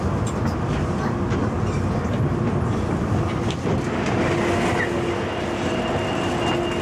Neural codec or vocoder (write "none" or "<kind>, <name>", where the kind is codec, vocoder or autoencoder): none